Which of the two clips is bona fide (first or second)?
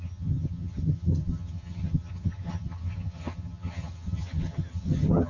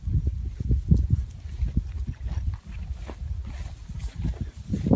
second